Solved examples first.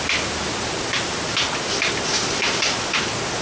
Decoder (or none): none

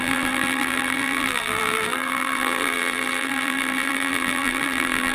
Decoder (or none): vocoder, BigVGAN v2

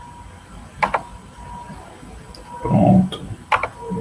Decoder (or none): none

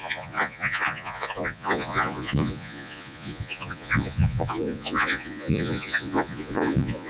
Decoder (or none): vocoder, Vocos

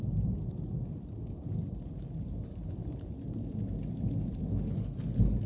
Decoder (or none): none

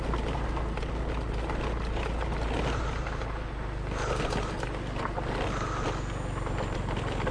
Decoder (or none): none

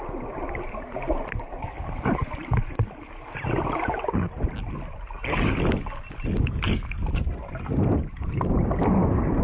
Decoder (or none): none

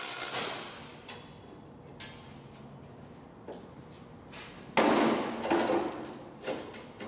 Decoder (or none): none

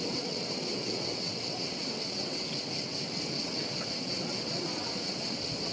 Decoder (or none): vocoder, WaveNeXt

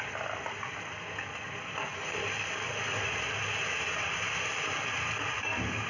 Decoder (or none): none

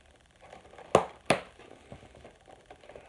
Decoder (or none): none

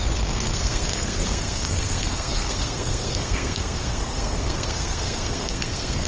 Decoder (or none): codec, SNAC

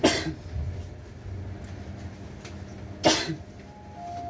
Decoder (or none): none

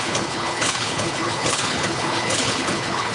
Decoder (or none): codec, HILCodec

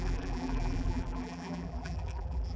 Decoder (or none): vocoder, BigVGAN v2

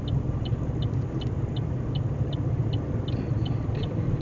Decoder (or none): none